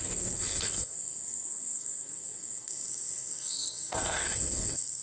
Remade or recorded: remade